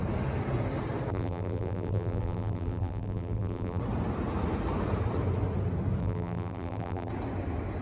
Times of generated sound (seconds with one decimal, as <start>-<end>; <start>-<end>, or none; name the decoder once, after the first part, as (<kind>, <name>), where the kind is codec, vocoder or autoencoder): 1.1-3.8 (vocoder, BigVGAN v2); 6.0-7.1